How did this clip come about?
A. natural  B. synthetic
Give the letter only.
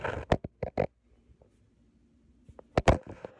A